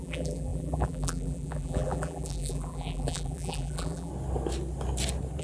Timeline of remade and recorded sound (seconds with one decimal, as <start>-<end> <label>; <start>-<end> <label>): 0.0-4.1 remade; 4.1-5.4 recorded